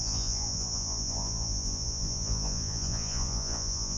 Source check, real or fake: fake